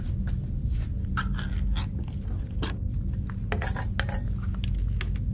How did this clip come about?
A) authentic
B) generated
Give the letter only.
A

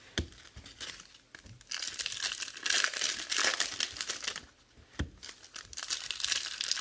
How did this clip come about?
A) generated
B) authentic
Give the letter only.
B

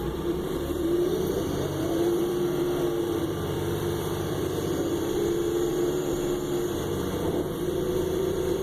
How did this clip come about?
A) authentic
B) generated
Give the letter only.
B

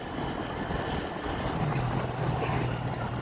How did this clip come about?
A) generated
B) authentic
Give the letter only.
B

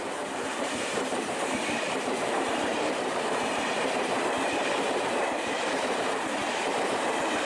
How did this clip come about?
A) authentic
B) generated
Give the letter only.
B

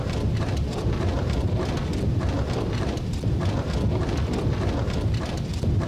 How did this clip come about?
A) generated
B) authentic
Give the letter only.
A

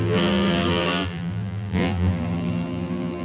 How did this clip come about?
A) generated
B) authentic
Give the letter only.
A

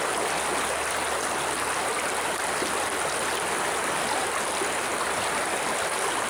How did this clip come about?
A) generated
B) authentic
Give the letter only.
B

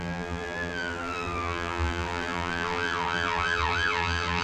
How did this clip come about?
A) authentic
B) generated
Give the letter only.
B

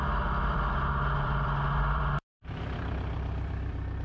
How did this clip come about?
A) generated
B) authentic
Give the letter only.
A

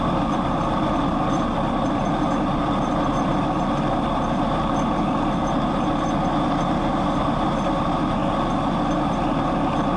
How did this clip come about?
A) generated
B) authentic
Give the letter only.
B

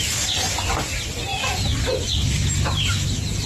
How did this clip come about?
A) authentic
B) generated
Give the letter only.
A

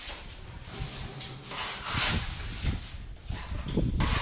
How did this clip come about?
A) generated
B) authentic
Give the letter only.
B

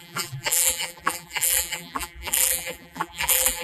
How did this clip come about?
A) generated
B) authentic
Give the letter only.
A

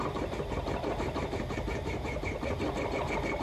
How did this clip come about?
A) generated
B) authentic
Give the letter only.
A